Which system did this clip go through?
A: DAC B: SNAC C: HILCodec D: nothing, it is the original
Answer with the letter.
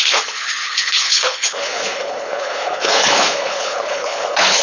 C